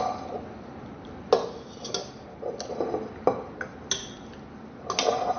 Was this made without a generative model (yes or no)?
yes